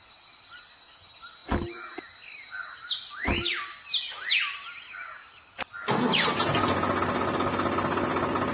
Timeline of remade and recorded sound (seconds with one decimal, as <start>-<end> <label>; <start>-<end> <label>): 0.0-8.5 recorded